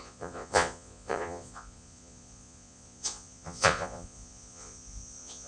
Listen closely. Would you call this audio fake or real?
fake